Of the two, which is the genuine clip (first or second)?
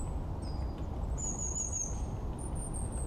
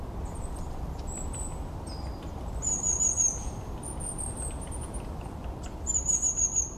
first